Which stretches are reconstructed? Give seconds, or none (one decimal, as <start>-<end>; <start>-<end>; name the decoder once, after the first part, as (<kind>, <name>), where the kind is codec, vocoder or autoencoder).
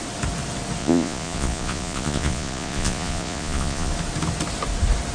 0.8-3.9 (vocoder, Vocos)